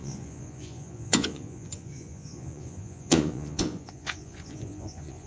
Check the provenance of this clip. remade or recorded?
remade